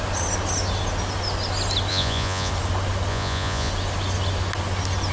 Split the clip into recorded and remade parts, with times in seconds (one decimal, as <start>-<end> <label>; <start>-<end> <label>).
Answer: 0.0-1.9 recorded; 1.9-2.5 remade; 2.5-3.1 recorded; 3.1-3.7 remade; 3.7-5.1 recorded